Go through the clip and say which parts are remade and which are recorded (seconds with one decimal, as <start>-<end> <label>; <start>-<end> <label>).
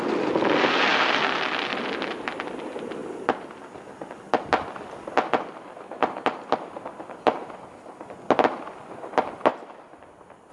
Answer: 0.0-0.9 recorded; 0.9-1.8 remade; 1.8-3.0 recorded; 3.0-3.5 remade; 3.5-9.5 recorded; 9.5-10.5 remade